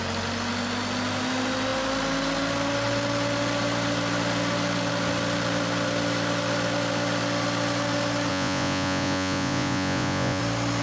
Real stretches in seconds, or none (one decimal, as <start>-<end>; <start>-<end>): 0.0-8.3; 10.4-10.8